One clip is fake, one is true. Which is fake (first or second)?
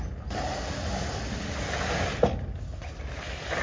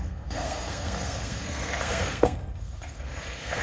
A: second